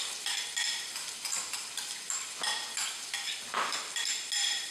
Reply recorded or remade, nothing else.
recorded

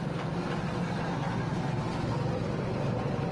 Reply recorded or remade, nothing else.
recorded